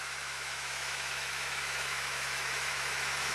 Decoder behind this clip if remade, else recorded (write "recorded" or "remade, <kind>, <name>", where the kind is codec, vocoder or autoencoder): remade, autoencoder, DAC-VAE